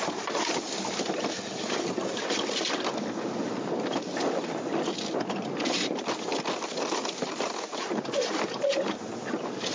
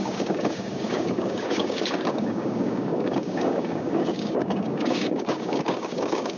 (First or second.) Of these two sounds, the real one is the first